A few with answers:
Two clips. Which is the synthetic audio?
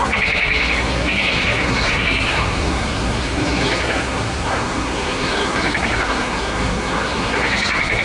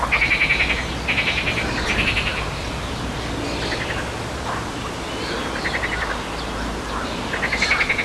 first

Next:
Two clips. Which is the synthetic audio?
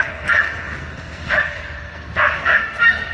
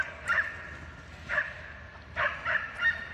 first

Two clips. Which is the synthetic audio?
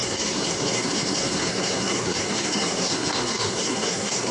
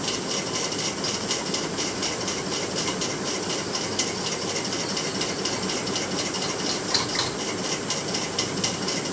first